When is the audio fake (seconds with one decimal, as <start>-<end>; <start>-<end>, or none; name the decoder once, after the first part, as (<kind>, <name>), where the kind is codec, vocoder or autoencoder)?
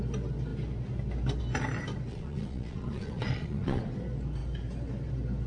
2.1-3.8 (vocoder, Vocos)